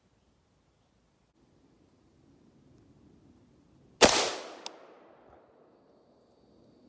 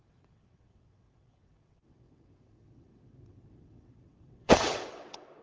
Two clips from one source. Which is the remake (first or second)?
second